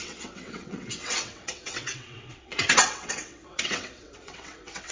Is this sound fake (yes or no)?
yes